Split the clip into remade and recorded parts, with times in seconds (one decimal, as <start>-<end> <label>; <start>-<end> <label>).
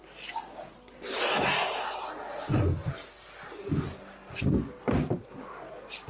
0.0-6.1 recorded